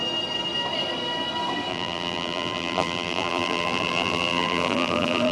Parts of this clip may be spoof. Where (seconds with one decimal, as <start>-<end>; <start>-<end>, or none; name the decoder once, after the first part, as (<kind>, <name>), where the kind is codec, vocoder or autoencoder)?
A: 1.7-5.3 (vocoder, BigVGAN v2)